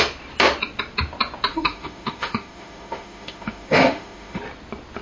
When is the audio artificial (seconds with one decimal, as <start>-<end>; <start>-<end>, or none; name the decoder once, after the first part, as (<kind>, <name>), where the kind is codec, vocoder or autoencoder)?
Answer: 1.5-4.4 (autoencoder, DAC-VAE)